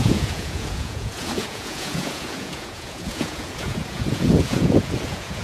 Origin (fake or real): fake